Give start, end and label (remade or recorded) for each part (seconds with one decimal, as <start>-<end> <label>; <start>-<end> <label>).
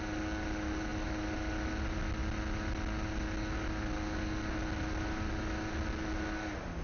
0.0-6.8 recorded